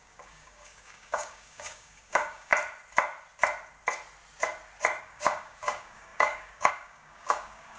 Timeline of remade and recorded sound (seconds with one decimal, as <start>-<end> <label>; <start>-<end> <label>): 0.0-2.5 remade; 2.5-5.0 recorded; 5.0-7.8 remade